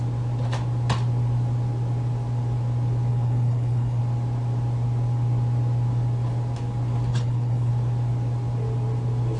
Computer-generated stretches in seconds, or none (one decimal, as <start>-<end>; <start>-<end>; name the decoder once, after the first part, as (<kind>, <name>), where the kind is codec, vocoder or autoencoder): 3.1-4.0 (codec, HILCodec); 7.1-7.7